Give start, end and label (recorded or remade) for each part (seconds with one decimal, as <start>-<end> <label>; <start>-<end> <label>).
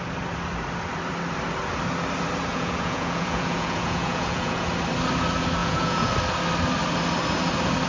0.0-2.5 recorded; 2.5-4.7 remade; 4.7-5.6 recorded; 5.6-6.1 remade; 6.1-7.9 recorded